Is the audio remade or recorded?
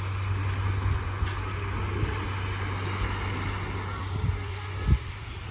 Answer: recorded